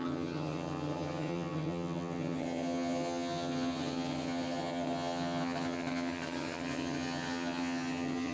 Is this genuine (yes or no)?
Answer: no